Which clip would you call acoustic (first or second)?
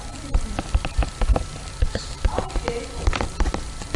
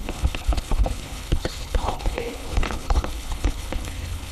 first